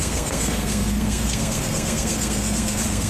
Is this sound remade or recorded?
remade